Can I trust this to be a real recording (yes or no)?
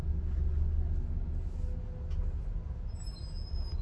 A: yes